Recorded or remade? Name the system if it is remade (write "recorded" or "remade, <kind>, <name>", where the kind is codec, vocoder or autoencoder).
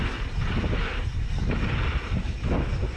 recorded